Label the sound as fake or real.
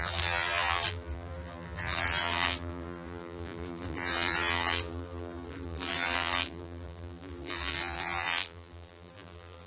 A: fake